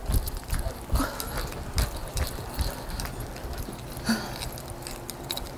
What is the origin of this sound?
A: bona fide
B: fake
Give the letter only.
A